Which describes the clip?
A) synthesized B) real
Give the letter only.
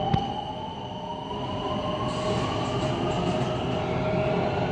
B